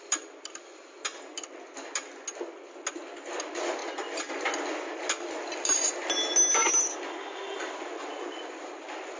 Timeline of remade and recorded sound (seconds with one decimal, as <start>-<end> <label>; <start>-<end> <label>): 0.0-9.2 recorded